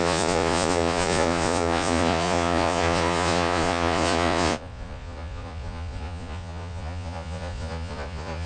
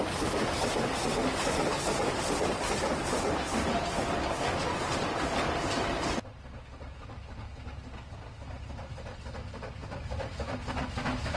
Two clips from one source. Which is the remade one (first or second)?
first